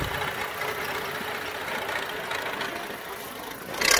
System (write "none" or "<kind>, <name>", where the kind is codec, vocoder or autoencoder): none